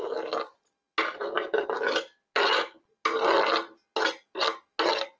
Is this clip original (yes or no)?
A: yes